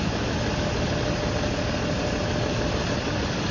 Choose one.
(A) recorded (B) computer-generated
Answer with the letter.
A